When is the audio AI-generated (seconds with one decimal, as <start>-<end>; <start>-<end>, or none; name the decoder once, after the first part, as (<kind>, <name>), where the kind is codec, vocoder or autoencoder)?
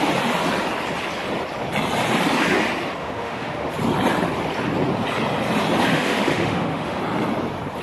3.0-3.7 (autoencoder, DAC-VAE); 5.9-7.0